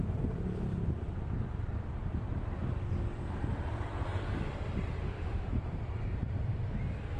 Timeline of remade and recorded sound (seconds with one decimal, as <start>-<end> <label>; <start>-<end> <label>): 0.0-5.0 recorded; 5.0-5.5 remade; 5.5-7.2 recorded

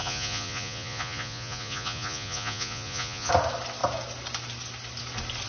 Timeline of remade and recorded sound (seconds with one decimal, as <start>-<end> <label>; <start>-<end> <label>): 0.0-3.3 remade; 3.3-5.5 recorded

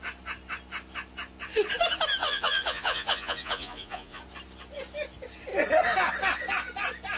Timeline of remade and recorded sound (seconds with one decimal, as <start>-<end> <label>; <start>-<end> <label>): 0.0-2.2 recorded; 2.2-4.2 remade; 4.2-7.2 recorded